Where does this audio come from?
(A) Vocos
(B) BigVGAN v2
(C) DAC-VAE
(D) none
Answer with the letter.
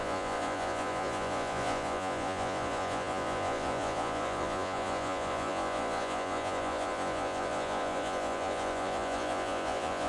A